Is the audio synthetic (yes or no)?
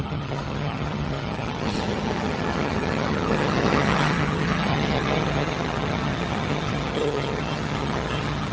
yes